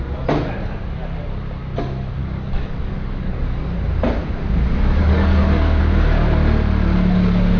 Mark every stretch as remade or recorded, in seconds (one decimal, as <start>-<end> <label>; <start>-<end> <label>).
0.0-2.2 recorded; 2.2-3.8 remade; 3.8-5.0 recorded; 5.0-5.8 remade; 5.8-7.6 recorded

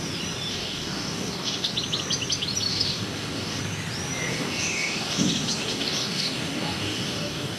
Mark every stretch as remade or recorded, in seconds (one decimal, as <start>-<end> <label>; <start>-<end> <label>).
0.0-0.5 recorded; 0.5-1.7 remade; 1.7-2.7 recorded; 2.7-3.6 remade; 3.6-4.3 recorded; 4.3-7.6 remade